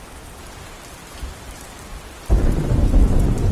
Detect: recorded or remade recorded